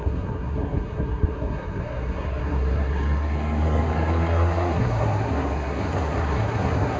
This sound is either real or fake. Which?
fake